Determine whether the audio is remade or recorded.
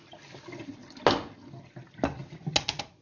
recorded